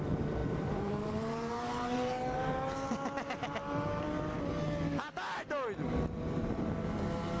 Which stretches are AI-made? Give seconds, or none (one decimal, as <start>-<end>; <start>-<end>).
0.4-4.0